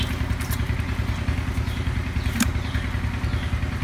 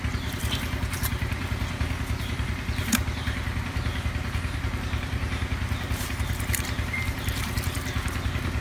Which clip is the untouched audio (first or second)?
first